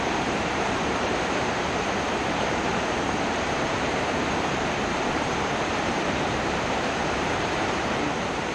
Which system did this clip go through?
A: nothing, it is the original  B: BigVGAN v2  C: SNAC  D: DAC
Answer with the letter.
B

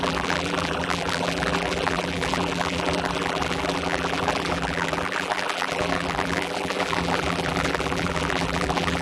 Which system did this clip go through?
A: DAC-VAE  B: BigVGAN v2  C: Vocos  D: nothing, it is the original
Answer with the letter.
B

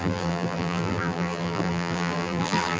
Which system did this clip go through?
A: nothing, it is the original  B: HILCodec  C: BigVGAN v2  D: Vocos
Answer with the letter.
C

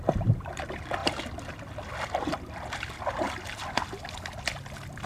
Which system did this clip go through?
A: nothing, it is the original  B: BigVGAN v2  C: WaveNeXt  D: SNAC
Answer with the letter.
A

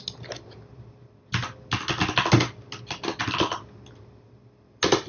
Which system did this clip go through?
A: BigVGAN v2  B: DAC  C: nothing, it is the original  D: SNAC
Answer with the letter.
C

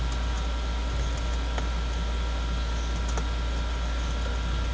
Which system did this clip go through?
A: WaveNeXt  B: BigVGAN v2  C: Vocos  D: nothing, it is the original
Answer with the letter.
D